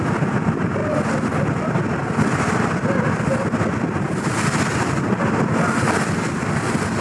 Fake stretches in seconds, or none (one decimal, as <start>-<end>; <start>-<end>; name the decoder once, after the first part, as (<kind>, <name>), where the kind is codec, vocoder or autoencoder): none